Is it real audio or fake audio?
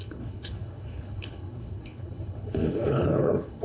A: fake